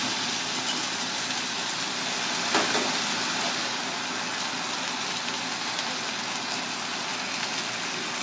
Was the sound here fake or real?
real